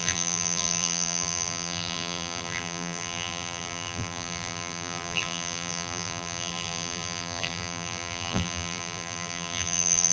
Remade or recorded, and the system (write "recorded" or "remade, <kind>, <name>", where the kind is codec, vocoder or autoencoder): remade, vocoder, BigVGAN v2